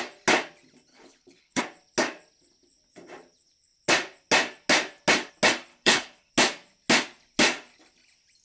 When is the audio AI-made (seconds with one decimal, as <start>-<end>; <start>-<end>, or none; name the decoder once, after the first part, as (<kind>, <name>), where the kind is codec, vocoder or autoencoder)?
0.9-1.6 (codec, HILCodec); 5.7-6.3